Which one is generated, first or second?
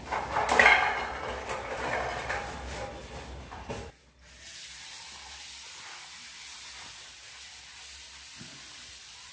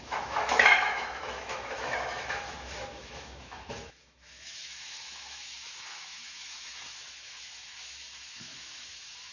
second